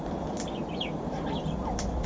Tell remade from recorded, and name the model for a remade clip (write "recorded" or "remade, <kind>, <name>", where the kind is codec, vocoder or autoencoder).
recorded